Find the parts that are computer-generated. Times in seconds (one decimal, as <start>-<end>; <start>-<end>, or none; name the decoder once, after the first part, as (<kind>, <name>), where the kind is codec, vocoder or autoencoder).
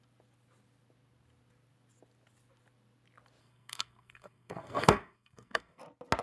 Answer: 3.4-5.8 (codec, SNAC)